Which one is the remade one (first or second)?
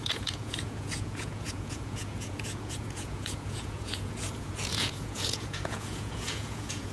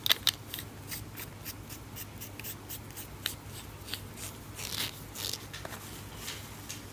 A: first